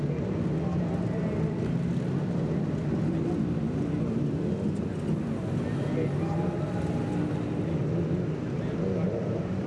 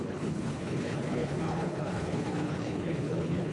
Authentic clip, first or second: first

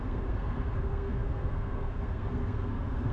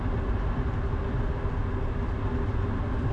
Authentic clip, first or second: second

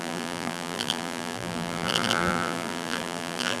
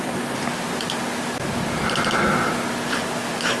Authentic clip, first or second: second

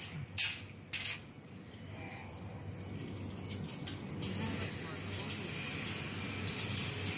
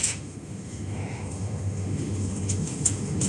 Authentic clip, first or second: first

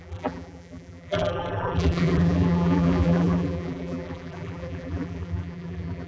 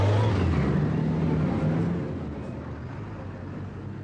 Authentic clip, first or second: second